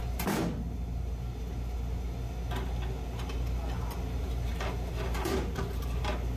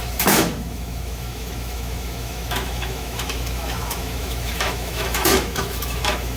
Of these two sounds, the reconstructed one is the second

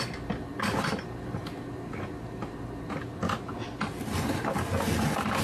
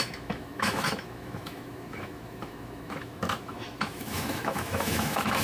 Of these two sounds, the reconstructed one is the second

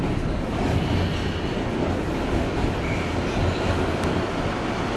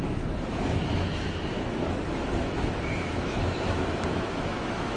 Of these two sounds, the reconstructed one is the second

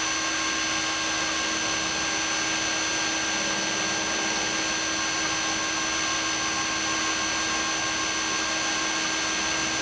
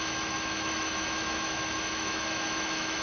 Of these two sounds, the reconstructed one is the second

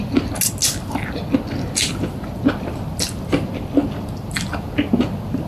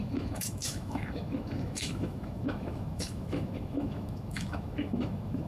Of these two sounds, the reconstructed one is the second